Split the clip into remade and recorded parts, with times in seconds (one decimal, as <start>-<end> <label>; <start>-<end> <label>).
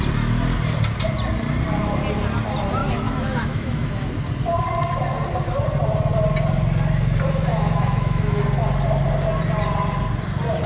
0.0-2.8 recorded; 2.8-4.1 remade; 4.1-7.5 recorded; 7.5-8.4 remade; 8.4-10.7 recorded